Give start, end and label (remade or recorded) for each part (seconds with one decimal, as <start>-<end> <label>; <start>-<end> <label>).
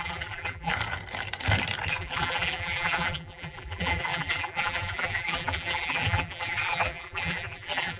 0.0-0.7 remade; 0.7-1.9 recorded; 1.9-8.0 remade